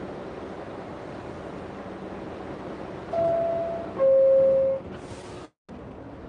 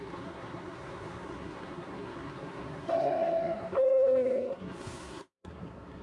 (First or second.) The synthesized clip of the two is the second